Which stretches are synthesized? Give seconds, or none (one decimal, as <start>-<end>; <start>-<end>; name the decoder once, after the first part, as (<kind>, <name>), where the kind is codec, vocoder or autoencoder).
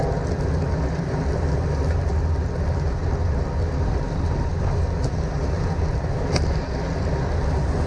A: none